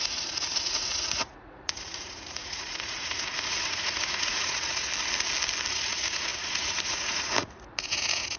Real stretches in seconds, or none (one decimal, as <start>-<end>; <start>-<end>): 4.9-5.7